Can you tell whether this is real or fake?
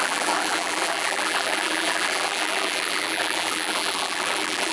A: fake